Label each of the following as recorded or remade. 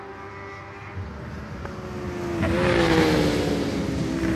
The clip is recorded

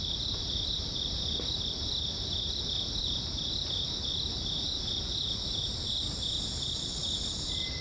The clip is recorded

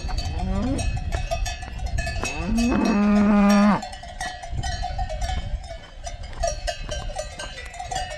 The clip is remade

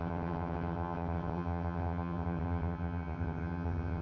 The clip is remade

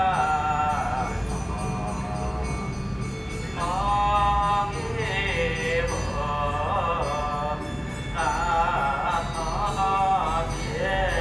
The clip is recorded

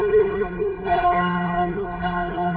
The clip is remade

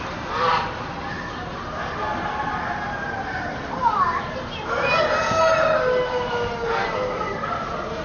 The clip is recorded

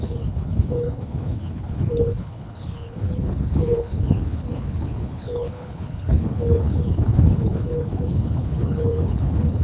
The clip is remade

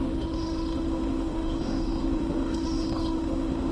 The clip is remade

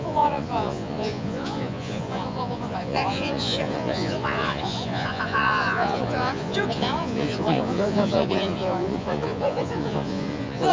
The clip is remade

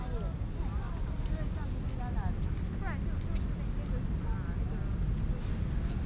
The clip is recorded